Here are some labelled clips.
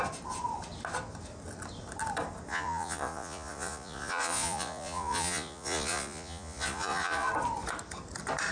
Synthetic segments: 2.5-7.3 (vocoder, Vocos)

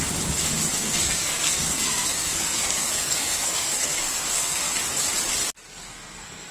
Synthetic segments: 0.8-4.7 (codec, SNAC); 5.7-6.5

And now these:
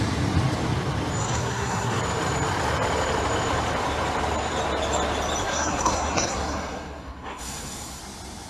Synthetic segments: 1.2-2.0 (codec, SNAC); 5.4-8.0